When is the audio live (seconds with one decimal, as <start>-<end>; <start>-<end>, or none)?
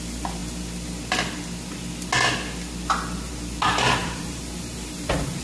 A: 0.0-4.0